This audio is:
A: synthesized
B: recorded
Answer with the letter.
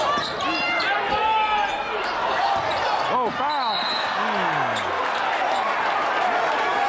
B